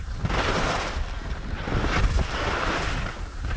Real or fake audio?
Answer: real